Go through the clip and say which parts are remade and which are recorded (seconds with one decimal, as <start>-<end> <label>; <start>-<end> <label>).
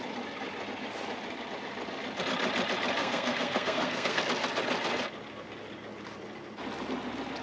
0.0-3.0 recorded; 3.0-4.2 remade; 4.2-7.4 recorded